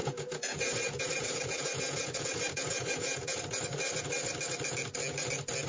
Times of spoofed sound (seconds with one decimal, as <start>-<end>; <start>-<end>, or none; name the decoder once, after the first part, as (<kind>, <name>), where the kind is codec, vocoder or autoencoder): 0.0-3.4 (vocoder, Vocos)